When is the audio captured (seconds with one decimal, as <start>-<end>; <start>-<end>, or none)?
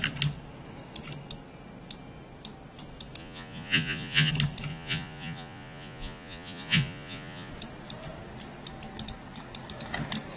0.0-3.2; 4.3-4.7; 7.5-10.4